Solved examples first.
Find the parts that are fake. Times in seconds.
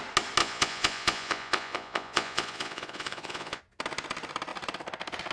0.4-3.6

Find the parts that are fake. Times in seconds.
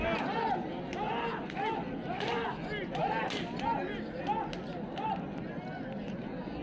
none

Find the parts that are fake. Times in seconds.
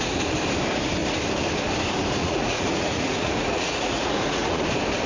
2.2-4.6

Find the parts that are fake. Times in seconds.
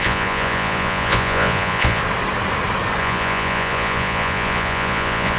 0.0-2.0; 3.0-5.4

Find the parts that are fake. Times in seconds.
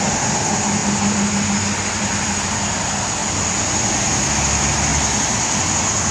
none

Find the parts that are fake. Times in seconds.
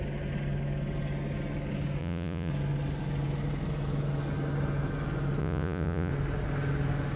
2.0-2.5; 5.4-6.1